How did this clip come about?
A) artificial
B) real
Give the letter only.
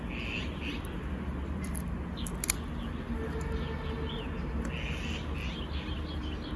B